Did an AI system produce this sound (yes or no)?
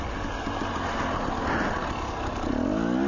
no